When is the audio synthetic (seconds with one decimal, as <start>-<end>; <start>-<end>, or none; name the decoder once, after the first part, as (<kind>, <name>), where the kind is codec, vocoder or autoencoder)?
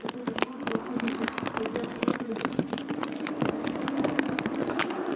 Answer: 2.1-3.3 (vocoder, Vocos); 4.6-5.2